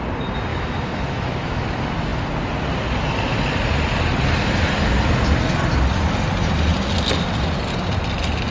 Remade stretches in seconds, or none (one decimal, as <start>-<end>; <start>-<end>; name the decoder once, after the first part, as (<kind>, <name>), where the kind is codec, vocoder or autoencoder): 0.5-1.7 (autoencoder, DAC-VAE)